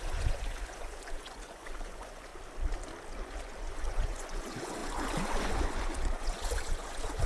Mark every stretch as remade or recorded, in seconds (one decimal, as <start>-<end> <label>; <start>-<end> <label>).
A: 0.0-2.3 remade; 2.3-3.1 recorded; 3.1-7.3 remade